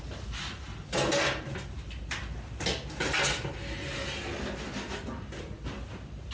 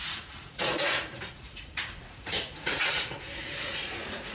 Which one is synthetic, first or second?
second